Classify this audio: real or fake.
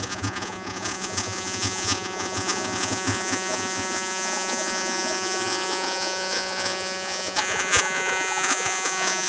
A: fake